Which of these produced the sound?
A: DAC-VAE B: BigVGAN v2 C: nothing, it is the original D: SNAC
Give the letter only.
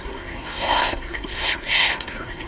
D